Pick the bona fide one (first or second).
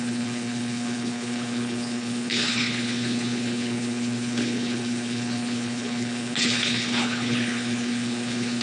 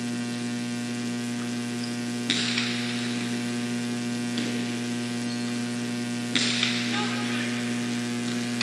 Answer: second